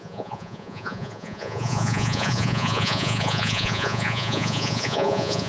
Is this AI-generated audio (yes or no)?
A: yes